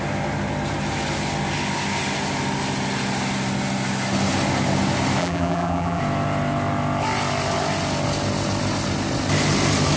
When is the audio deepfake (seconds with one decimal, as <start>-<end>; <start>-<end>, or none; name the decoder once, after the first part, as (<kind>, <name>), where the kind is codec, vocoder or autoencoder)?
5.2-6.0 (vocoder, BigVGAN v2)